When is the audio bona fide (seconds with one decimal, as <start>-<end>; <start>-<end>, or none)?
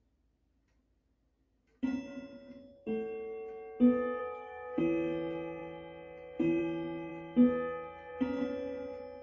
0.0-4.2; 4.8-9.2